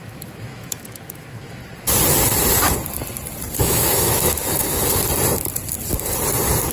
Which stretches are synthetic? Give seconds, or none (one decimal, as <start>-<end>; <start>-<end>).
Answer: 0.0-1.6; 3.6-5.0